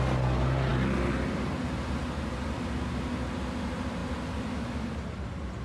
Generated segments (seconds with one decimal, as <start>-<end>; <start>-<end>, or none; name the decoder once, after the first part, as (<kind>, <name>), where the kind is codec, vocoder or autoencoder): none